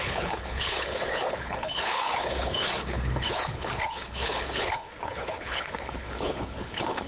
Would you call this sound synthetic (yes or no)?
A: yes